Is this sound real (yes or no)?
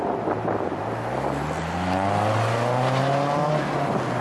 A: yes